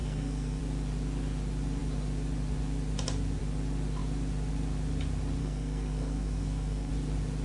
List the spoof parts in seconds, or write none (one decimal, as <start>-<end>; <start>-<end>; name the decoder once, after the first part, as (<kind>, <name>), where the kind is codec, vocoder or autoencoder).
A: 0.0-0.6 (codec, SNAC); 5.4-6.9

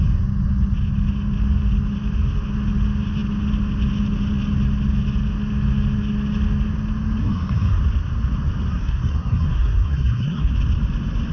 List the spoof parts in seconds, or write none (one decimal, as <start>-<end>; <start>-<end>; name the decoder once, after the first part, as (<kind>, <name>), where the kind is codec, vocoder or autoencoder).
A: 7.2-7.8 (codec, SNAC); 8.7-10.5

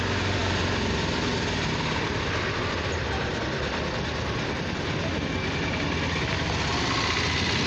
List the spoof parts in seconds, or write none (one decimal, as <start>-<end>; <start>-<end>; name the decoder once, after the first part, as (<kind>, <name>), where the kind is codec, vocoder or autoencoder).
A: none

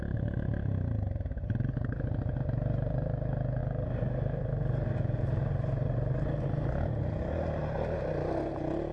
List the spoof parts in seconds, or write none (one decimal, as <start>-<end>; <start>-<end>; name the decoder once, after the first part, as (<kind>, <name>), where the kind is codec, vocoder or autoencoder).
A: none

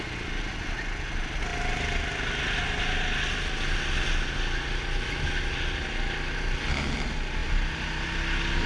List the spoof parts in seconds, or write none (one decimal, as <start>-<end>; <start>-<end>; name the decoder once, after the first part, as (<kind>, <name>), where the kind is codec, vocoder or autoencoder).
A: none

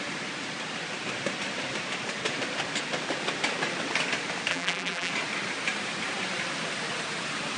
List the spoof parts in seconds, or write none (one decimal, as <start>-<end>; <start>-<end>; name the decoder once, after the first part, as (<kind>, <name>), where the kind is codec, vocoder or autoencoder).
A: 4.5-5.1 (vocoder, BigVGAN v2)

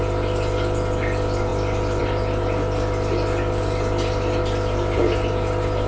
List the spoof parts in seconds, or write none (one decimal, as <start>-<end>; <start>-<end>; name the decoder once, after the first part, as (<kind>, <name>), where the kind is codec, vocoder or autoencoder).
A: none